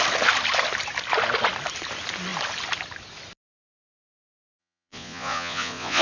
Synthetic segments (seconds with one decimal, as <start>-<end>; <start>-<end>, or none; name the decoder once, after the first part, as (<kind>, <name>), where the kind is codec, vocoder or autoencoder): 4.6-6.0 (vocoder, Vocos)